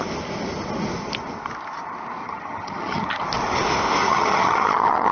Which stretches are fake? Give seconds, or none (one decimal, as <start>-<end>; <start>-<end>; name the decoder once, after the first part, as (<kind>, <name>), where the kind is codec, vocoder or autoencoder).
2.2-3.2 (vocoder, HiFi-GAN); 4.0-5.1